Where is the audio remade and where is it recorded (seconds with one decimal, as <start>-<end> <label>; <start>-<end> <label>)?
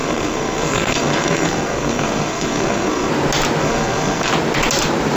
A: 0.0-3.1 remade; 3.1-3.6 recorded; 3.6-4.3 remade; 4.3-5.2 recorded